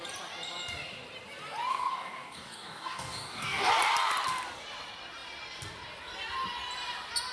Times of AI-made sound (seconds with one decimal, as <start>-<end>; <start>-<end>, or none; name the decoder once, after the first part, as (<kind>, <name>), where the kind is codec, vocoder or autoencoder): 1.7-3.7 (codec, DAC)